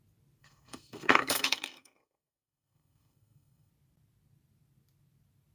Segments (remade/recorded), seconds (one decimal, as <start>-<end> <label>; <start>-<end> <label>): 0.0-0.4 recorded; 0.4-3.7 remade; 3.7-5.5 recorded